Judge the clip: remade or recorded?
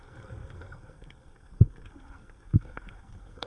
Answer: remade